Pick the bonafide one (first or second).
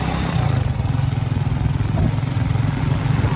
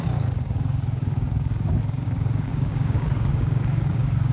first